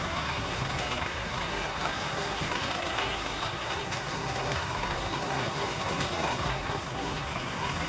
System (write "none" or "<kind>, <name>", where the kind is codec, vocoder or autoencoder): codec, SNAC